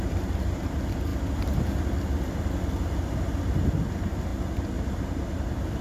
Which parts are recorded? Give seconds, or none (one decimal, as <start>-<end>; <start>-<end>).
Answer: 0.0-5.8